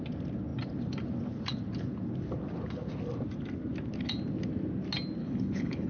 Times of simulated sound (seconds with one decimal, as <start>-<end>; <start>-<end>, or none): 5.2-5.9